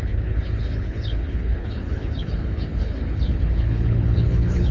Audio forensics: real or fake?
fake